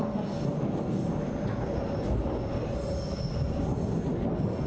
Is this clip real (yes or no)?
yes